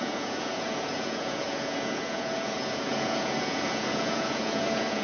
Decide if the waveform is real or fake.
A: fake